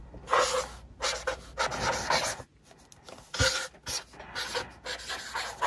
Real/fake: real